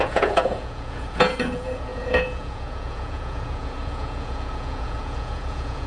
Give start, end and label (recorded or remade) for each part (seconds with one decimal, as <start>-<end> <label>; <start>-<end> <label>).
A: 0.0-5.9 remade